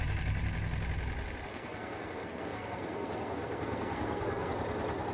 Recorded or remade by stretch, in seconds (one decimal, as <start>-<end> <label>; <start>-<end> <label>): 0.0-1.5 recorded; 1.5-4.5 remade; 4.5-5.1 recorded